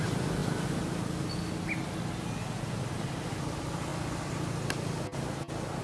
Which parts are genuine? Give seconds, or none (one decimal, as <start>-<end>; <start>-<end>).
0.0-5.8